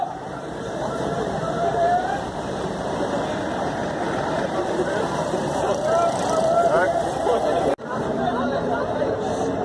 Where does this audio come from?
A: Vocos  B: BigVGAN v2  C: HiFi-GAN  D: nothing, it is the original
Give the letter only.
B